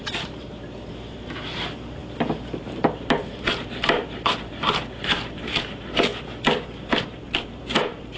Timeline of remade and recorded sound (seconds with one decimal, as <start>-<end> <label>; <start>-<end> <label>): 0.0-2.0 remade; 2.0-2.6 recorded; 2.6-6.1 remade; 6.1-7.0 recorded; 7.0-8.2 remade